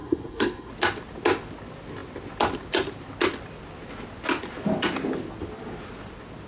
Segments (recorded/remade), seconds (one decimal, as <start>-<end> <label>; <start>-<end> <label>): 0.0-0.7 remade; 0.7-6.5 recorded